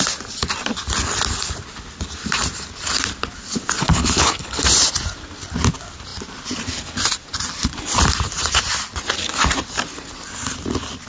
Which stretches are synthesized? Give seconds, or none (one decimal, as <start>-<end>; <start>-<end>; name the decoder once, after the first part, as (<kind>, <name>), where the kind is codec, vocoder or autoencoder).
3.8-4.6 (codec, HILCodec)